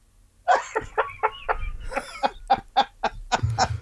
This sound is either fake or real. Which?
real